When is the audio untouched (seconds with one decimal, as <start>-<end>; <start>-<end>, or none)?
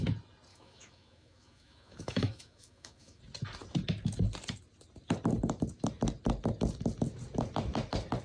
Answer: 0.0-0.5; 3.2-8.2